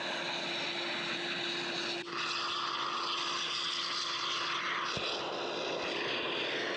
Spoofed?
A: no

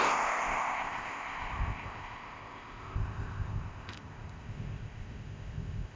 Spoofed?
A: yes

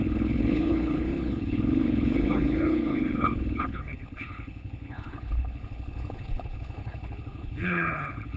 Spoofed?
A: yes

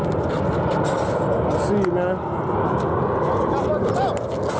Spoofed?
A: no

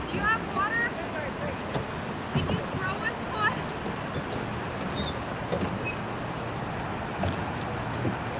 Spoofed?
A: no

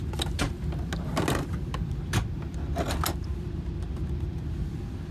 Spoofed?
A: no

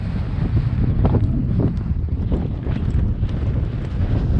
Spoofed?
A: no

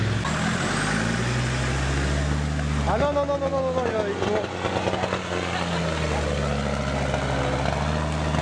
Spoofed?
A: no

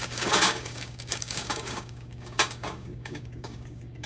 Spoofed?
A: yes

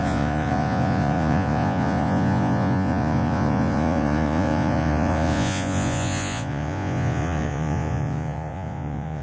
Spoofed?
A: yes